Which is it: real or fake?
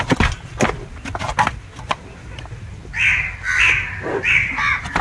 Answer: real